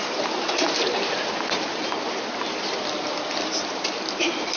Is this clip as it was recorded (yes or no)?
yes